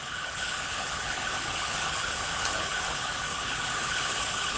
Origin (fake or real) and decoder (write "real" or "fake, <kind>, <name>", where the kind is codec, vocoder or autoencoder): fake, codec, HILCodec